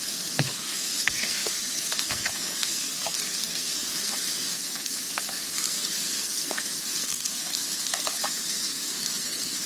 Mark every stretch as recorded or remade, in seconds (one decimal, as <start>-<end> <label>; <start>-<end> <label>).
0.0-9.7 remade